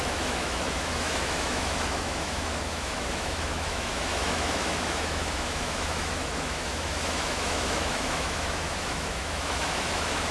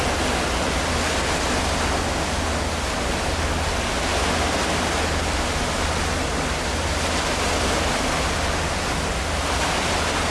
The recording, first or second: second